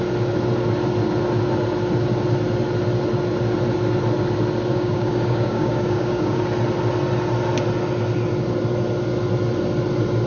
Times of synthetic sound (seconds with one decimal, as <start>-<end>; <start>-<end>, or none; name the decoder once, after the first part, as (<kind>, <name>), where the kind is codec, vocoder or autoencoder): 4.7-6.4 (codec, DAC)